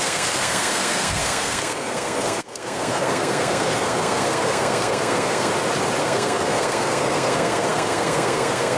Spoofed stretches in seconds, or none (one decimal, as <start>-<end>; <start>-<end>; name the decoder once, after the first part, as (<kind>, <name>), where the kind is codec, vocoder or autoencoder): 0.0-5.5 (codec, SNAC); 6.0-8.8